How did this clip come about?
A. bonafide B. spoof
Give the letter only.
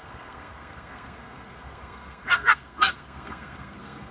B